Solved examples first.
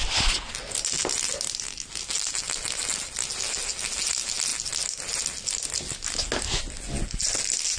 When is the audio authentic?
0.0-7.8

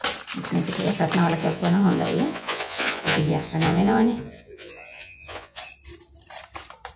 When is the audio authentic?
0.0-1.4; 5.6-7.0

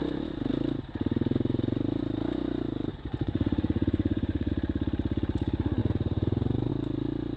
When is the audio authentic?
0.0-2.9; 4.5-5.8; 6.7-7.4

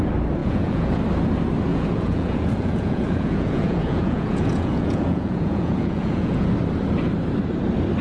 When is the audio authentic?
0.0-0.4; 1.0-1.7; 6.5-8.0

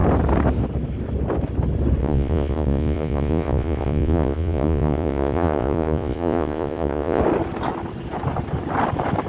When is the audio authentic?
0.0-2.0; 7.2-9.3

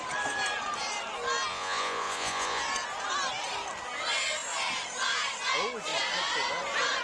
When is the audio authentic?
0.0-1.5; 2.6-7.0

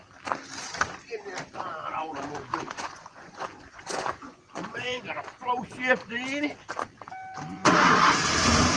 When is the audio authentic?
0.0-1.9; 5.0-8.8